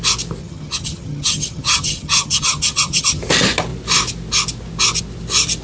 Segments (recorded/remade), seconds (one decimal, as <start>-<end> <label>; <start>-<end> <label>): 0.0-0.4 recorded; 0.4-3.2 remade; 3.2-5.6 recorded